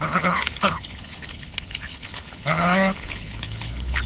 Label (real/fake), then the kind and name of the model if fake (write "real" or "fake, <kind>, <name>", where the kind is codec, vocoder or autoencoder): fake, codec, HILCodec